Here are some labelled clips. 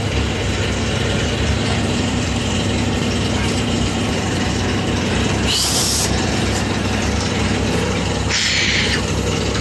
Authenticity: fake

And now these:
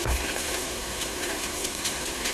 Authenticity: fake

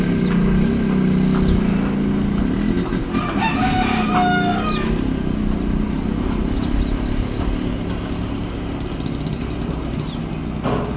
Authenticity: real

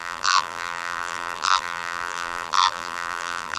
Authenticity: fake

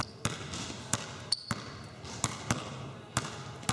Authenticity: real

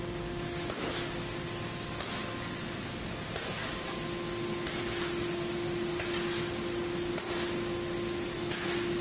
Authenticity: real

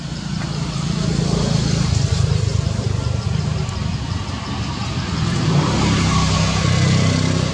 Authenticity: real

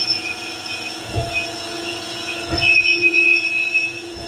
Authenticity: fake